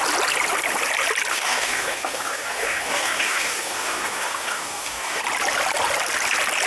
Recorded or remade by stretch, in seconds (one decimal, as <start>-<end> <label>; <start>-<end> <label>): 0.0-1.3 recorded; 1.3-5.2 remade; 5.2-6.7 recorded